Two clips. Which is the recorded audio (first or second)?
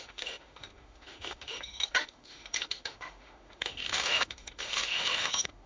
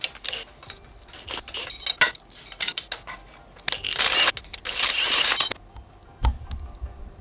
second